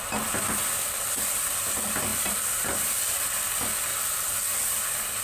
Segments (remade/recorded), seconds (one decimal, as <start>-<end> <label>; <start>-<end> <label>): 0.0-2.1 recorded; 2.1-3.5 remade; 3.5-3.9 recorded; 3.9-4.8 remade; 4.8-5.2 recorded